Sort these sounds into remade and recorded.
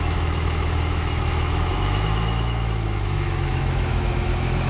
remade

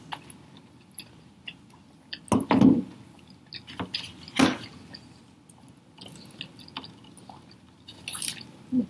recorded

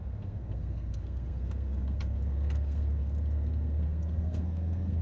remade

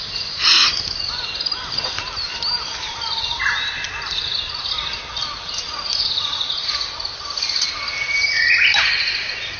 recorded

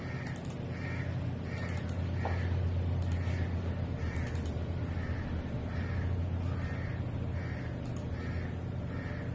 recorded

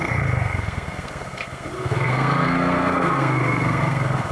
remade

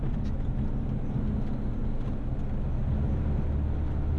recorded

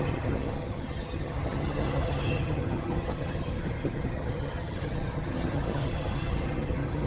remade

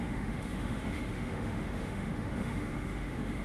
remade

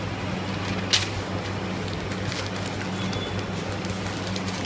recorded